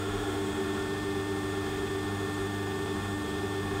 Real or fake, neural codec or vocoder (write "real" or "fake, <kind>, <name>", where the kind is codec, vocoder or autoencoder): fake, autoencoder, DAC-VAE